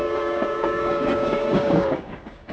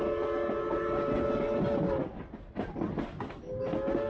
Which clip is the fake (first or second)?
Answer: first